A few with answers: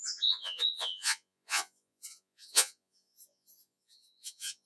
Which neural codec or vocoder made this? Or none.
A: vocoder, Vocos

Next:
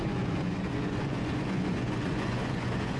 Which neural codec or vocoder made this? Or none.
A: vocoder, Vocos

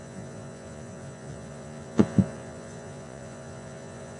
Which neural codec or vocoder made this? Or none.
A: vocoder, Vocos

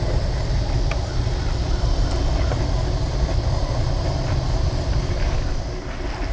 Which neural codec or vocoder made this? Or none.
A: none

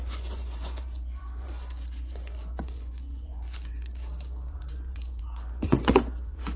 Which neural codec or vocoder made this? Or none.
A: vocoder, Vocos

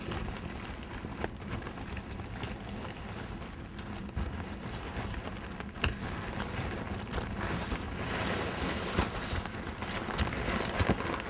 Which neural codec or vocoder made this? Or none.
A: none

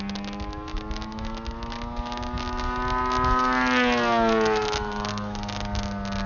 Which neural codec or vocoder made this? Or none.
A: none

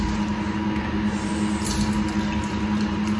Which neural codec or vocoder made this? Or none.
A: none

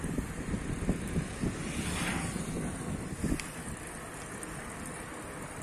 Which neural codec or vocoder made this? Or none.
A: none